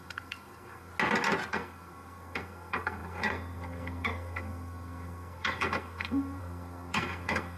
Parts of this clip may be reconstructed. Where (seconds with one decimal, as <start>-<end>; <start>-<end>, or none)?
0.0-0.9; 1.5-7.6